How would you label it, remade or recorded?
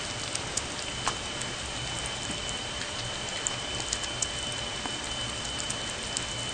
recorded